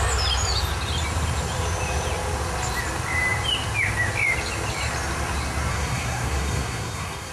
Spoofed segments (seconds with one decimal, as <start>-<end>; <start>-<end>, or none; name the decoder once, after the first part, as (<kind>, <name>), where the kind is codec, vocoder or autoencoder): 5.7-7.3 (codec, SNAC)